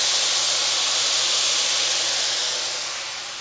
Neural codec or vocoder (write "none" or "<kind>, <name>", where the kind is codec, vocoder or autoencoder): none